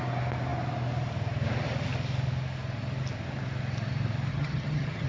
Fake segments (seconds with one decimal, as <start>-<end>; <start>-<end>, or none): 4.3-5.1